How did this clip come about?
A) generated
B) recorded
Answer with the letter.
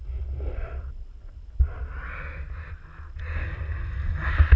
B